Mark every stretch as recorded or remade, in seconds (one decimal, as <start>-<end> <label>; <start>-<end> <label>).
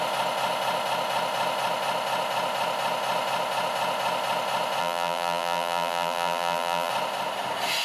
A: 0.0-4.8 recorded; 4.8-6.9 remade; 6.9-7.8 recorded